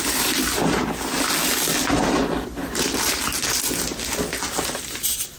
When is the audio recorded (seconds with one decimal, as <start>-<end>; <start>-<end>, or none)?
0.0-2.6; 3.2-5.4